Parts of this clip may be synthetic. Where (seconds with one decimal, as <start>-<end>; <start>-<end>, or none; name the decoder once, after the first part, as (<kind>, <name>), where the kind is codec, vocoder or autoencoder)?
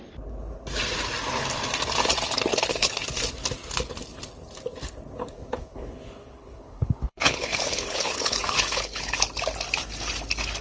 2.5-3.0 (codec, HILCodec); 5.2-9.2